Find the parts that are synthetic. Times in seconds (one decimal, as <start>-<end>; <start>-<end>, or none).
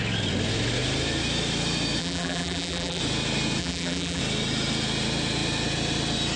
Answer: 2.0-3.0; 3.6-4.2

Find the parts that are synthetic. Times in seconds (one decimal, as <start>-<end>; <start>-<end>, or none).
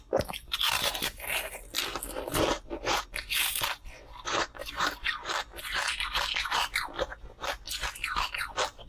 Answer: none